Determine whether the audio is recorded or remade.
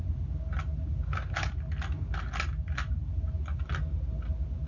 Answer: recorded